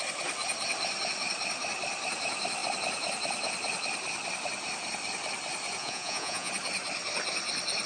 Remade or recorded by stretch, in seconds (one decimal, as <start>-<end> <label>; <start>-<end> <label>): 0.0-5.8 recorded; 5.8-6.5 remade; 6.5-7.9 recorded